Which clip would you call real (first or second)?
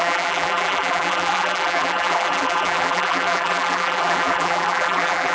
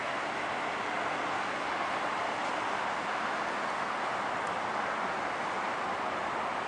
second